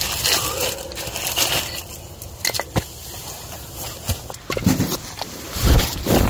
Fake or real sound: real